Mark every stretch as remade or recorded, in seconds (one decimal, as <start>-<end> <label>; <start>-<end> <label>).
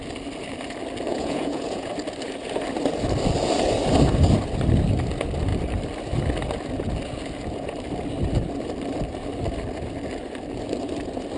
0.0-1.1 recorded; 1.1-1.9 remade; 1.9-11.4 recorded